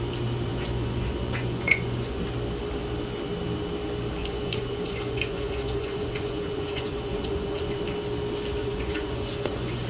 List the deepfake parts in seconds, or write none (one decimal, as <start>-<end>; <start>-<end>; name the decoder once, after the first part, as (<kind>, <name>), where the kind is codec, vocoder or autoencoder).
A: 0.5-2.2 (vocoder, Vocos); 4.2-7.8; 8.6-9.9